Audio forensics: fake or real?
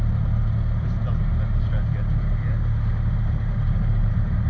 real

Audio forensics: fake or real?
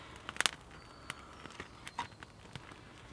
real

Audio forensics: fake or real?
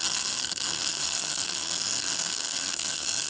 fake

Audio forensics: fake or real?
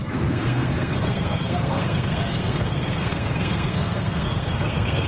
fake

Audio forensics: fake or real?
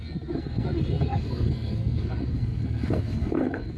fake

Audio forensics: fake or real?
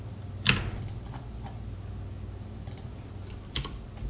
real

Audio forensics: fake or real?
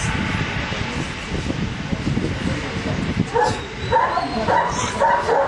real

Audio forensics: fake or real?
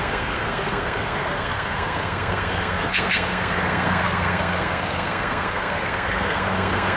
fake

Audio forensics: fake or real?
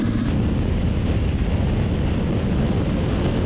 real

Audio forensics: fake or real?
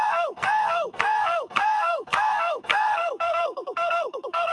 fake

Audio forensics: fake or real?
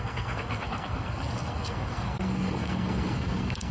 fake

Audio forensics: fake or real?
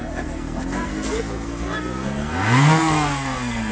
fake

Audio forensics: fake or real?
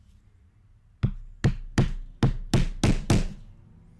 real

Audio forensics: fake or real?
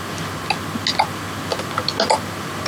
real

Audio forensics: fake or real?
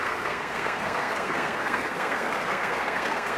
fake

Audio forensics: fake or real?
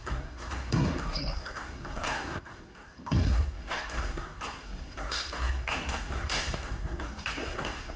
fake